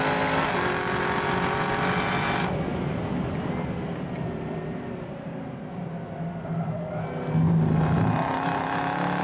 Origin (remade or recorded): recorded